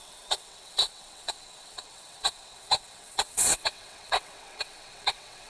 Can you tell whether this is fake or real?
fake